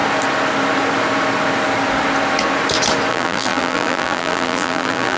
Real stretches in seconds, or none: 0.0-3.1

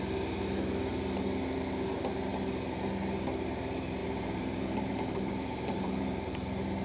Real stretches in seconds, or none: 0.0-4.0; 6.3-6.8

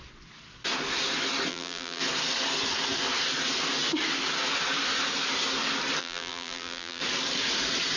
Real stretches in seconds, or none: 0.0-1.5; 2.0-6.0; 7.0-8.0

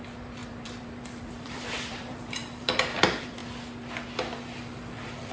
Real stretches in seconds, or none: 3.4-4.4

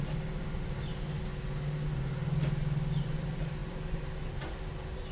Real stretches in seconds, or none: 0.9-3.0